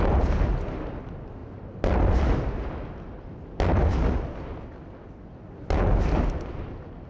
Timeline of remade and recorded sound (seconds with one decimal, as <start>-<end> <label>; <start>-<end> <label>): 0.0-7.1 recorded